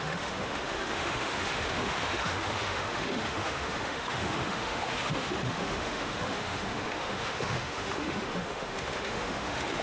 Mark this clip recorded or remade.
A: remade